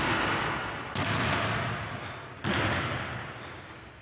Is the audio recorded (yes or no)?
yes